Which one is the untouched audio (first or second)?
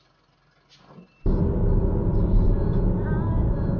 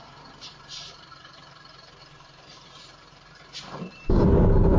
first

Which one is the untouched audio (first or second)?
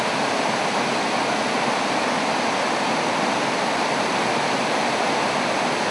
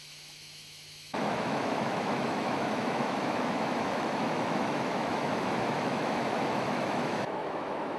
first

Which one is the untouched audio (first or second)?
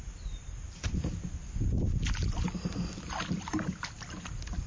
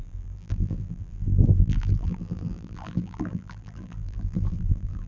first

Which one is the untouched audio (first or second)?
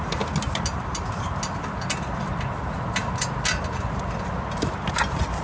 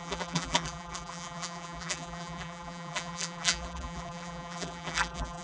first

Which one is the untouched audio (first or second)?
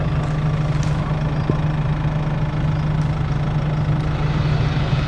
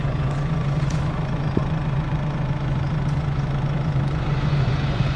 first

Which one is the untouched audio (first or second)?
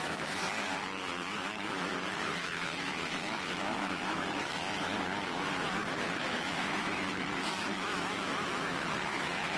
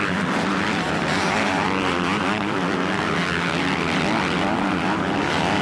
second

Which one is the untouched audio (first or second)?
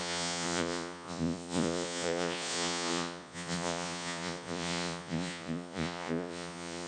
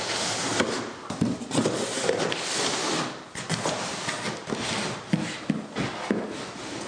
second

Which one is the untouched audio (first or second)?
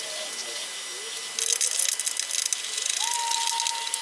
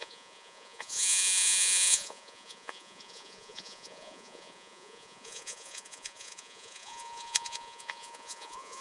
first